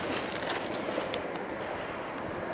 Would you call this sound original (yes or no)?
yes